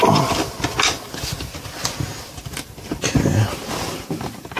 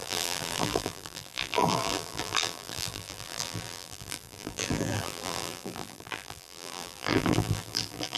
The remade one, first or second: second